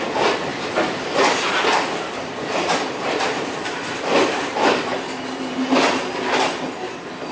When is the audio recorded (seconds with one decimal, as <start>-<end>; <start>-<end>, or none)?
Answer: 4.9-6.7